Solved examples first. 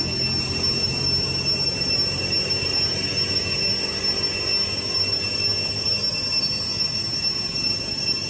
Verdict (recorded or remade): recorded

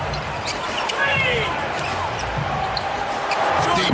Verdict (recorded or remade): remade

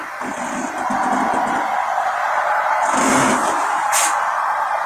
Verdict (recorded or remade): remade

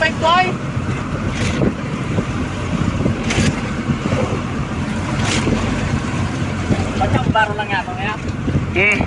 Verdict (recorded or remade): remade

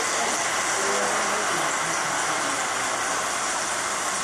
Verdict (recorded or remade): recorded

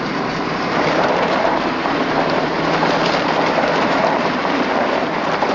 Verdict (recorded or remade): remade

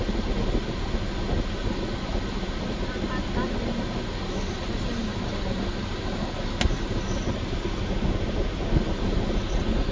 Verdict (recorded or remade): recorded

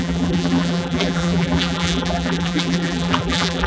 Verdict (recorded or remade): remade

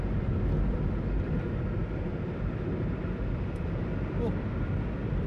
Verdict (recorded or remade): remade